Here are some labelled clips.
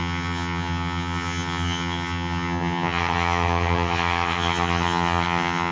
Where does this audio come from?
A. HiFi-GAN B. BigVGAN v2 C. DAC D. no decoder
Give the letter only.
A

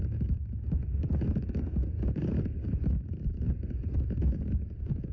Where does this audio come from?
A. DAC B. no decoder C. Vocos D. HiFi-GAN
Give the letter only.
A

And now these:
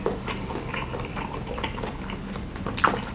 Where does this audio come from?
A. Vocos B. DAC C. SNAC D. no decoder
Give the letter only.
D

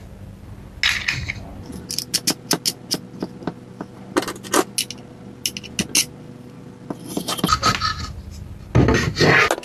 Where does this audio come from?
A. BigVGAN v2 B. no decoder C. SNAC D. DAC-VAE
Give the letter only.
B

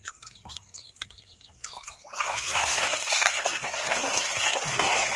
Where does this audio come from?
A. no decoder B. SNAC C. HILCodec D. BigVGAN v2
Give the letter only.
B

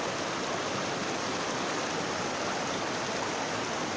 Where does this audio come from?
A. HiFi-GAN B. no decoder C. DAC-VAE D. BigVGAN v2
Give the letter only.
B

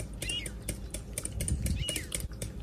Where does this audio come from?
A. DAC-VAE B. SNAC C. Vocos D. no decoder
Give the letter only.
D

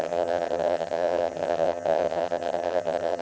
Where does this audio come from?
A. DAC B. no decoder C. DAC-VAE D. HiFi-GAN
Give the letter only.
D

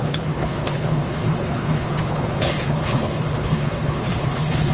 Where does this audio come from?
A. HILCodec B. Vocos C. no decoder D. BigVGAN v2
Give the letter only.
A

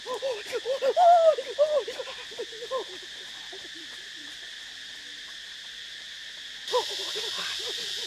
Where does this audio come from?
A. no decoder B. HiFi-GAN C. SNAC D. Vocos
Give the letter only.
A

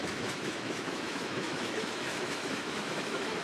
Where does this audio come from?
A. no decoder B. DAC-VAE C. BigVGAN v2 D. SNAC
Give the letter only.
B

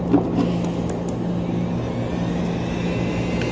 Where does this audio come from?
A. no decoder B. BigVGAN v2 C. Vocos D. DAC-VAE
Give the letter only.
A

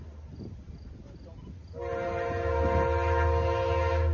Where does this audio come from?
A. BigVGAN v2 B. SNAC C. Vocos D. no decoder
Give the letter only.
D